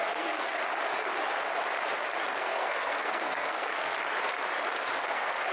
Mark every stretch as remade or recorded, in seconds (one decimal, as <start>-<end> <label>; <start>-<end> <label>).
0.0-0.6 remade; 0.6-2.3 recorded; 2.3-3.9 remade; 3.9-5.1 recorded; 5.1-5.5 remade